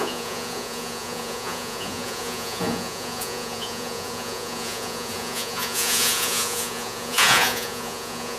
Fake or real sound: fake